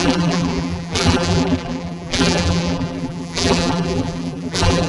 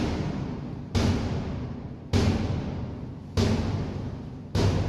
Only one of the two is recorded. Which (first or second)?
second